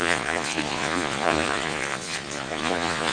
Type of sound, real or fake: fake